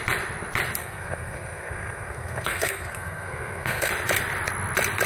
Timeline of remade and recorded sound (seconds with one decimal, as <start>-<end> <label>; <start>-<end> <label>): 0.0-0.8 recorded; 0.8-3.9 remade; 3.9-5.1 recorded